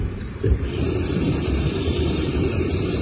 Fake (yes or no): yes